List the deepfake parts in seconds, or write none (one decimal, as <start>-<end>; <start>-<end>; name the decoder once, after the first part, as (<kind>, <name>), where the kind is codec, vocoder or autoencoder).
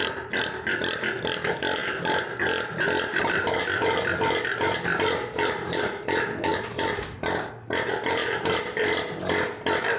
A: none